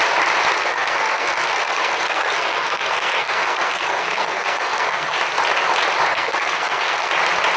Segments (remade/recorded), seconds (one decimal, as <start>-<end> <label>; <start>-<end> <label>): 0.0-0.6 recorded; 0.6-5.2 remade; 5.2-6.1 recorded; 6.1-7.1 remade; 7.1-7.6 recorded